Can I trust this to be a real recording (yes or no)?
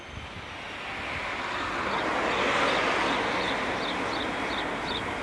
yes